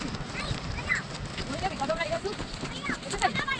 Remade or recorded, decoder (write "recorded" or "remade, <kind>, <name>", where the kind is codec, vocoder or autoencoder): recorded